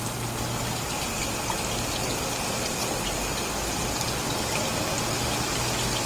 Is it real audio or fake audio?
real